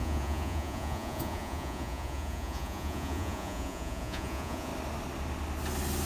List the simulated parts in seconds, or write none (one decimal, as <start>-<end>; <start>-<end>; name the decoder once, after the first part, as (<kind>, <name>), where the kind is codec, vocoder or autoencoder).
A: 0.0-4.7 (vocoder, Vocos)